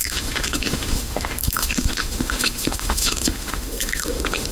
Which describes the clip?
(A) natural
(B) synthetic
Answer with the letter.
B